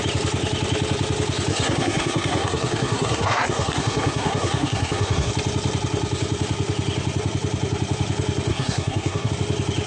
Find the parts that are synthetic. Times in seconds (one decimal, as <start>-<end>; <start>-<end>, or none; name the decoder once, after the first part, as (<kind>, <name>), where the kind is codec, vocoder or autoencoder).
1.5-5.3 (codec, SNAC); 8.5-9.3